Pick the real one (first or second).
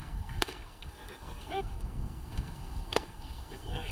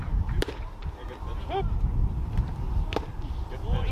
second